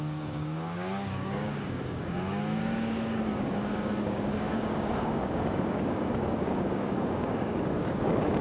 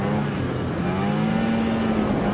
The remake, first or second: first